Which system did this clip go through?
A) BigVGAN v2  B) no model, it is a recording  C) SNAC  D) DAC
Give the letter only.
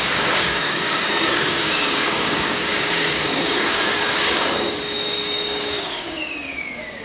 D